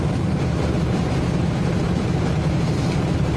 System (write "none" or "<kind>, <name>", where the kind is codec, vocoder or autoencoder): vocoder, BigVGAN v2